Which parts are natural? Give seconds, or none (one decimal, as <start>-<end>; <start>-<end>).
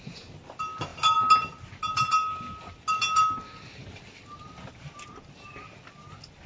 0.0-6.5